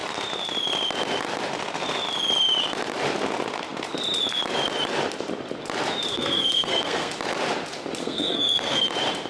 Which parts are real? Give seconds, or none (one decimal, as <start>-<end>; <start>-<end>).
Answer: 0.0-6.1; 7.1-8.0; 8.9-9.3

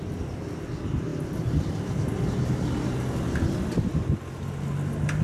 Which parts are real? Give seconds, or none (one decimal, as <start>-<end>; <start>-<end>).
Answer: 0.0-5.2

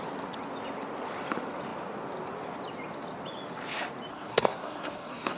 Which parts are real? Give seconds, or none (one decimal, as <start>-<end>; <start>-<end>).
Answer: 0.0-4.1

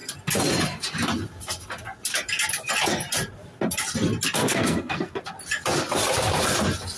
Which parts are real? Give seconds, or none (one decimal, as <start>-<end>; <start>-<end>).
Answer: 0.0-4.4; 5.2-7.0

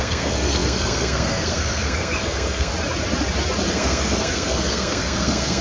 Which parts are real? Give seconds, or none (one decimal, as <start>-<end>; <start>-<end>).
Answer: 2.7-3.7